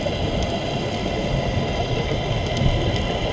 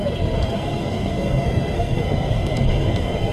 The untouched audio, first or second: first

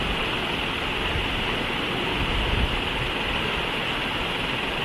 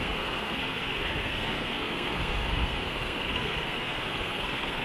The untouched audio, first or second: first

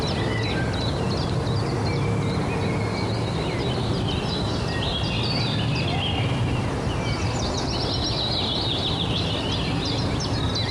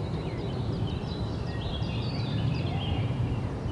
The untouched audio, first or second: first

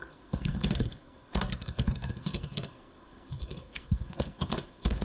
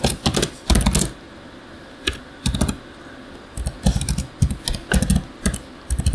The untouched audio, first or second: second